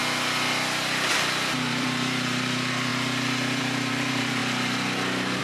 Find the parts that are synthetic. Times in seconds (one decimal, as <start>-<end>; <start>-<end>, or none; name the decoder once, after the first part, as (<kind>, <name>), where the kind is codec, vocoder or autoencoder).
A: 1.1-2.9 (vocoder, BigVGAN v2); 3.6-4.4